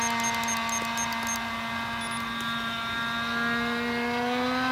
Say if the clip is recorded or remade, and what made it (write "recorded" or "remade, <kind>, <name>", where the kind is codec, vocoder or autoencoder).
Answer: recorded